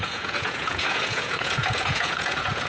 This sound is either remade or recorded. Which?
remade